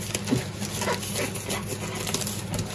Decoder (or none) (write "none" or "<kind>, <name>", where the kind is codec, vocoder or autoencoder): none